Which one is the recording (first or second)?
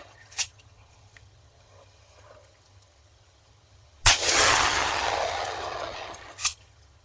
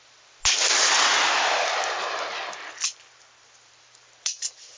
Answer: second